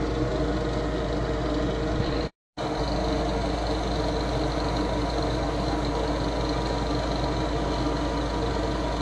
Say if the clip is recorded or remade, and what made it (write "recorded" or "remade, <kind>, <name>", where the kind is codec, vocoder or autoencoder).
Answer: recorded